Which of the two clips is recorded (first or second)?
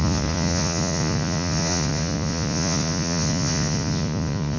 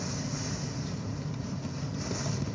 second